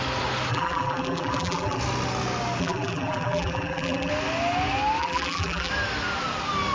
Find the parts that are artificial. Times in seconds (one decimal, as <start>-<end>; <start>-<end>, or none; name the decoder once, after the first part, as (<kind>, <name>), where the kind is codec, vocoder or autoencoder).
0.5-1.8 (vocoder, BigVGAN v2); 2.6-4.1; 5.0-5.7